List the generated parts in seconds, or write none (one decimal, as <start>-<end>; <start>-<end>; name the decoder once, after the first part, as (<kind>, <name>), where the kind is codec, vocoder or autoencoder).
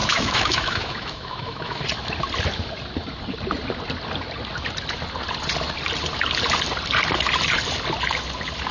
0.0-1.8 (autoencoder, DAC-VAE)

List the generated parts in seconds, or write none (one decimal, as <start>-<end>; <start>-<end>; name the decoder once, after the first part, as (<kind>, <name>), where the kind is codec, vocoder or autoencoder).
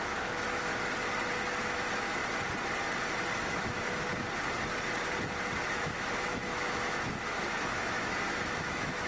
0.0-0.7 (autoencoder, DAC-VAE); 1.6-2.2; 3.4-4.1; 5.7-9.1